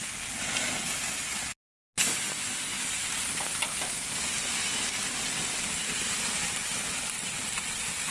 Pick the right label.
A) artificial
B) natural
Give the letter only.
B